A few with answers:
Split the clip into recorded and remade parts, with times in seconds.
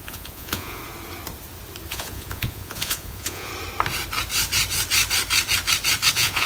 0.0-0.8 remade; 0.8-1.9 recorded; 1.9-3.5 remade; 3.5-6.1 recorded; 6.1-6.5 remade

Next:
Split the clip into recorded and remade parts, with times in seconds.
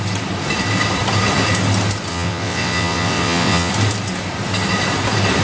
0.0-2.1 recorded; 2.1-3.7 remade; 3.7-5.4 recorded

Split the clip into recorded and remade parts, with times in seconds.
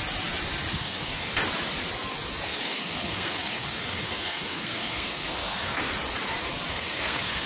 0.0-0.7 recorded; 0.7-1.3 remade; 1.3-2.5 recorded; 2.5-5.8 remade; 5.8-6.7 recorded; 6.7-7.5 remade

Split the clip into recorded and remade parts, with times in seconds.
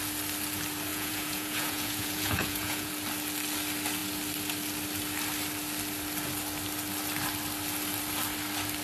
0.0-0.9 recorded; 0.9-2.9 remade; 2.9-8.8 recorded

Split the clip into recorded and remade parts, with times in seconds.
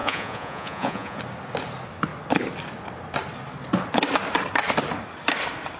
0.0-1.2 remade; 1.2-5.8 recorded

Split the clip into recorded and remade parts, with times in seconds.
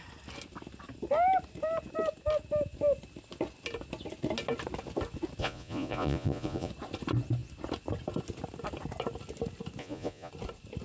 0.0-5.4 recorded; 5.4-6.7 remade; 6.7-9.8 recorded; 9.8-10.3 remade; 10.3-10.8 recorded